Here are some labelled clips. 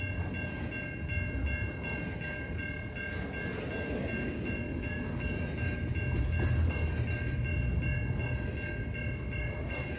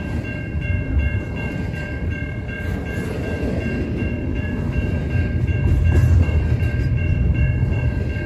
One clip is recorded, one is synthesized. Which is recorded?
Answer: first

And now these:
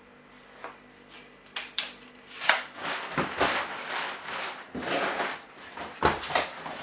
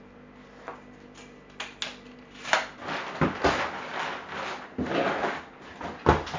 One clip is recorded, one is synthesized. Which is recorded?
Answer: second